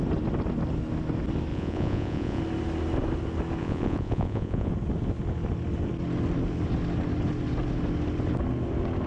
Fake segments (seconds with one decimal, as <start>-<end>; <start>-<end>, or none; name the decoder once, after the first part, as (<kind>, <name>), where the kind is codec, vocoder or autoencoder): 1.5-2.4 (vocoder, Vocos); 3.6-4.7